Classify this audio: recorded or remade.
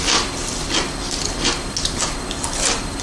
recorded